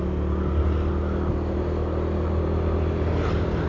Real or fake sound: real